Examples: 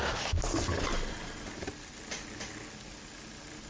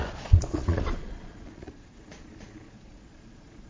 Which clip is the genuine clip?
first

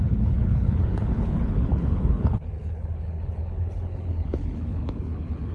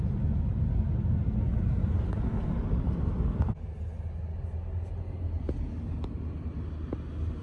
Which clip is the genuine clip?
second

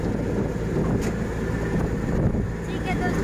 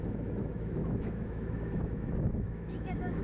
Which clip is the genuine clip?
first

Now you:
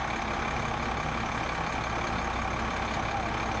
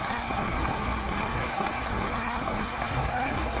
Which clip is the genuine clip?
first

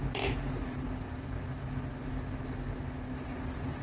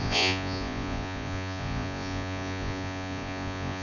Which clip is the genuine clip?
first